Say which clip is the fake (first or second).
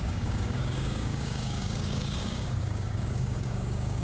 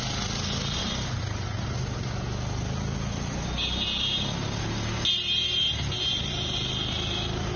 first